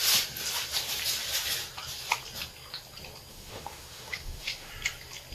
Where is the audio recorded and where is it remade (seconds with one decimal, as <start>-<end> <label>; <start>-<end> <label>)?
0.0-3.3 recorded; 3.3-4.7 remade; 4.7-5.3 recorded